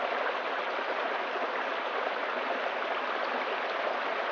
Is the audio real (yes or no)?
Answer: yes